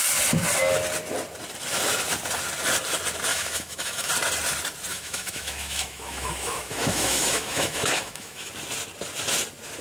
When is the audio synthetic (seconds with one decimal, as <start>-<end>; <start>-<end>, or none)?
3.3-4.1; 4.9-8.5